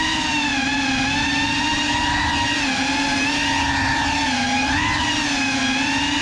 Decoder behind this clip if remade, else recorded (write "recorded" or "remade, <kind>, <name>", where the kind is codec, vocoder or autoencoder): recorded